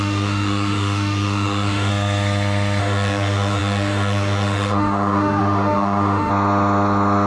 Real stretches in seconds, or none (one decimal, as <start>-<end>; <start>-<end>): 1.9-2.8; 6.3-7.3